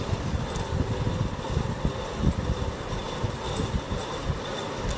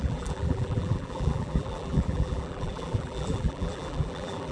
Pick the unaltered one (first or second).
first